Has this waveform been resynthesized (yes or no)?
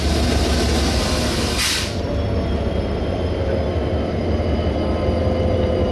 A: no